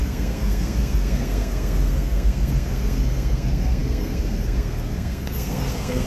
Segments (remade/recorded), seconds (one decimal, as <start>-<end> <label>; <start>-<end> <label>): 0.0-6.1 remade